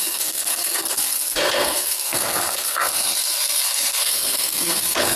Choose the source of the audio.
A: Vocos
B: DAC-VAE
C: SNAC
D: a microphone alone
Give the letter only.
C